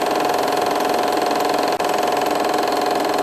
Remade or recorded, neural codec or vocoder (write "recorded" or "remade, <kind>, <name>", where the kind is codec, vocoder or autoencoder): recorded